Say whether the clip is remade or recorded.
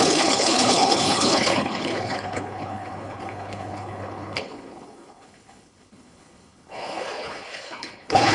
remade